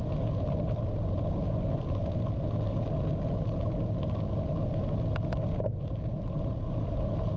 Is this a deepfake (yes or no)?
no